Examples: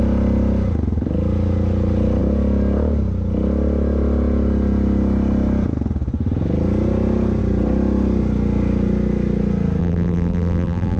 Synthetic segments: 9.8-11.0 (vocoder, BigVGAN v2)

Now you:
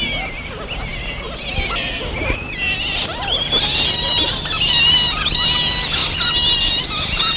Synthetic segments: 0.9-5.3 (vocoder, BigVGAN v2); 6.0-6.8

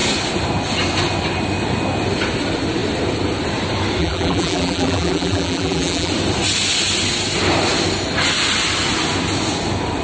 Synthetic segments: 4.0-6.1 (vocoder, BigVGAN v2)

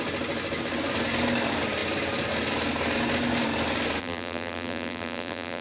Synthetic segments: 4.0-5.6 (vocoder, BigVGAN v2)